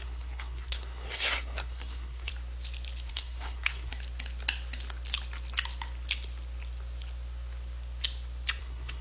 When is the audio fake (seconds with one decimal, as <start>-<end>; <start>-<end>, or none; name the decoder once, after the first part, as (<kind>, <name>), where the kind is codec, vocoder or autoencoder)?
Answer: 0.0-2.3 (codec, SNAC); 3.1-3.9; 8.6-9.0